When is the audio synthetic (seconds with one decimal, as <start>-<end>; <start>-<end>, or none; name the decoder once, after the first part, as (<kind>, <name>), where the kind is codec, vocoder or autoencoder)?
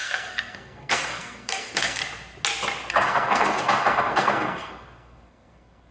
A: 0.0-2.0 (codec, SNAC); 2.9-5.9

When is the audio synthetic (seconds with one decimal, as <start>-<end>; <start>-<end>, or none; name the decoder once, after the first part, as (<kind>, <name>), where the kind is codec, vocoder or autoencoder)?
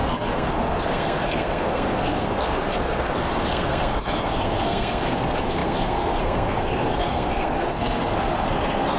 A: 0.0-9.0 (codec, SNAC)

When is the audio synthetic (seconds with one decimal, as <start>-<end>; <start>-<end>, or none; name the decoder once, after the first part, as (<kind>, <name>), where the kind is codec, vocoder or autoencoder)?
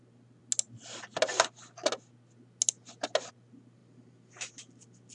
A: none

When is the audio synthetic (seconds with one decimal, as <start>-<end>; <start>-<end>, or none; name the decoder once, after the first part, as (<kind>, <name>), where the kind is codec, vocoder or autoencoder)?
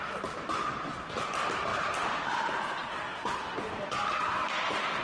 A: 2.9-3.6 (codec, SNAC)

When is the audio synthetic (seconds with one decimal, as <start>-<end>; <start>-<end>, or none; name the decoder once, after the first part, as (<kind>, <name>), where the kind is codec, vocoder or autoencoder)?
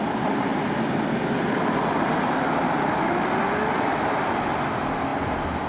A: none